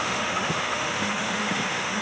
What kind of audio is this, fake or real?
fake